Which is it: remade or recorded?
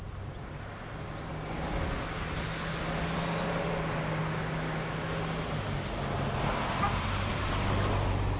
recorded